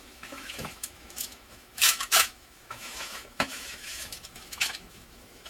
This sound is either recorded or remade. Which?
remade